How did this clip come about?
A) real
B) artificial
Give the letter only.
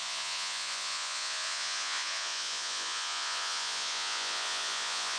B